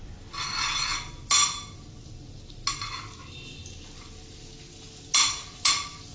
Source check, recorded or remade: recorded